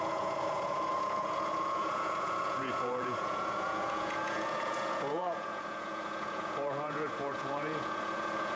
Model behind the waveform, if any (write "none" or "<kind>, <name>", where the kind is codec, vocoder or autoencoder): vocoder, Vocos